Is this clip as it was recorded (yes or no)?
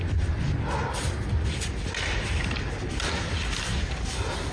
yes